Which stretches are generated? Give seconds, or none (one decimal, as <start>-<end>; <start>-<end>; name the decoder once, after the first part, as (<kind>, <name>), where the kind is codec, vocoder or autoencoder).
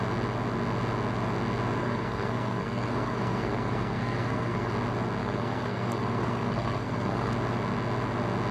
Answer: 1.8-4.7 (codec, SNAC); 5.2-7.3